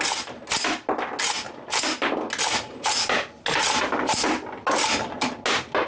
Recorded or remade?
recorded